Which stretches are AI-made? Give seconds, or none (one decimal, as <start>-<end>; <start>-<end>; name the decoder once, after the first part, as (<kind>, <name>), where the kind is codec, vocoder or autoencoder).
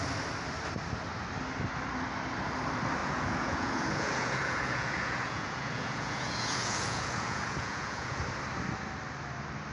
3.0-8.2 (vocoder, Vocos)